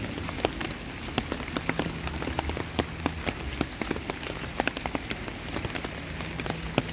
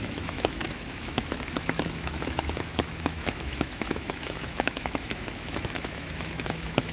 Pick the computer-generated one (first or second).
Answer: second